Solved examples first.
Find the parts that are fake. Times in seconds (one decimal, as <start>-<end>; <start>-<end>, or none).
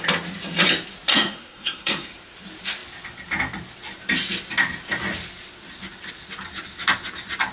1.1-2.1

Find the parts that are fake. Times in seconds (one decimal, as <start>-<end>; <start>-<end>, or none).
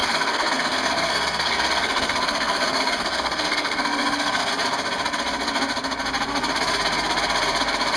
0.0-4.5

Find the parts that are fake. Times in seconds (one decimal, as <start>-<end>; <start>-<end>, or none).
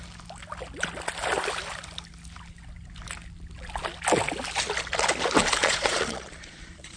5.6-7.0